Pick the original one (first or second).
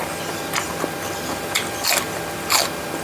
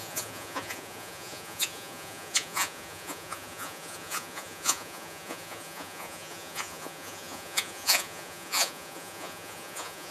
first